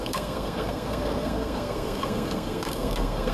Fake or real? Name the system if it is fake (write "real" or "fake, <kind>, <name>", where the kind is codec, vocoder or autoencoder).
fake, codec, SNAC